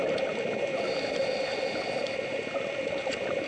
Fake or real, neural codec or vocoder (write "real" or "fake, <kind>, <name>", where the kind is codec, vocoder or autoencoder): real